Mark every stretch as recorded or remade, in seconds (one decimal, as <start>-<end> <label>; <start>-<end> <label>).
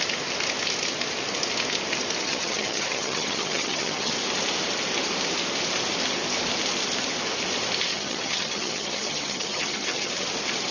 0.0-2.2 recorded; 2.2-4.1 remade; 4.1-7.9 recorded; 7.9-10.1 remade; 10.1-10.7 recorded